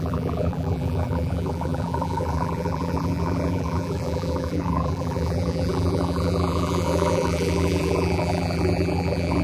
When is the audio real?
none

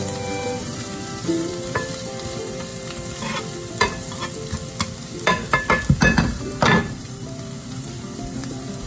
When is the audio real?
2.7-6.2

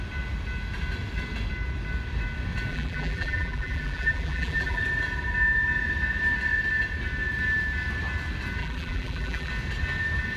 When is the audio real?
0.0-2.7; 4.8-8.6; 9.5-10.4

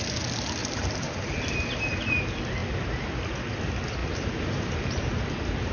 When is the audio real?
0.0-0.6; 1.3-4.0; 5.2-5.7

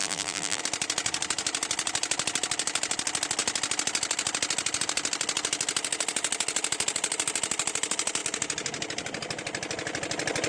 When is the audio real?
0.6-10.5

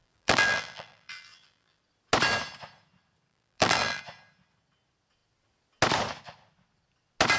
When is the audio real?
1.8-3.3; 4.0-7.4

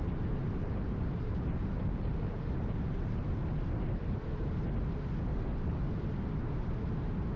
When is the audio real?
0.0-0.4; 3.3-5.3; 5.9-7.4